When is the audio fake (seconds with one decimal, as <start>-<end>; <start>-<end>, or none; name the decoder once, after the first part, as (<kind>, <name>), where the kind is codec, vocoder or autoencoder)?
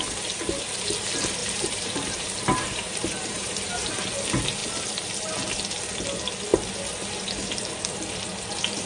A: 1.4-3.9 (vocoder, BigVGAN v2)